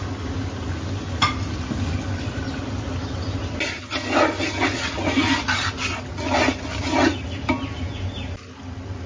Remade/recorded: recorded